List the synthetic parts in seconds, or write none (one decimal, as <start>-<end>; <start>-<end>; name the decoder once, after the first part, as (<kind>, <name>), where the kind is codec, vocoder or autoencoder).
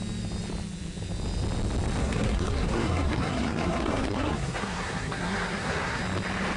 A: 2.0-6.0 (codec, SNAC)